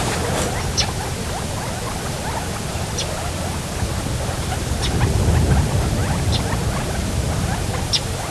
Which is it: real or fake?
real